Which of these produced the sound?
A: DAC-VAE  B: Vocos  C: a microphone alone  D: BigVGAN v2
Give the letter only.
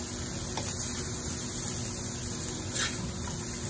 C